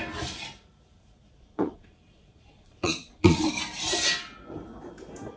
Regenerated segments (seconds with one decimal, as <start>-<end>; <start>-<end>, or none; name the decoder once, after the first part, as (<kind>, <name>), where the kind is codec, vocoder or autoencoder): 1.0-3.5 (vocoder, Vocos)